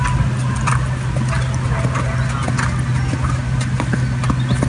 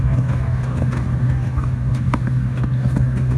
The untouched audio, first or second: first